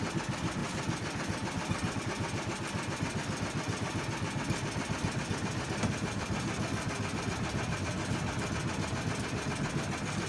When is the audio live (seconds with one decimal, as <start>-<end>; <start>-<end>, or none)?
0.0-10.3